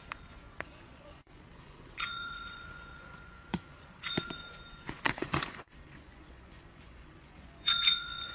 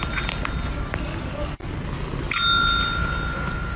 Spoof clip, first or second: first